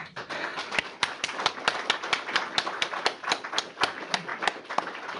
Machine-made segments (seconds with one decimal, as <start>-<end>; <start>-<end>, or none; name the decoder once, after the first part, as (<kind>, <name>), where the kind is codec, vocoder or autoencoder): none